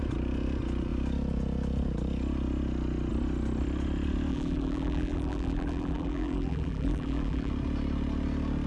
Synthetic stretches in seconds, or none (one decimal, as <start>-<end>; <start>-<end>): 4.3-7.5